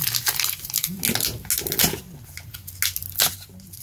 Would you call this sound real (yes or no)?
yes